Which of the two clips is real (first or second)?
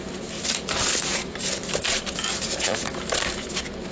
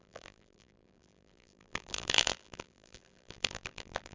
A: first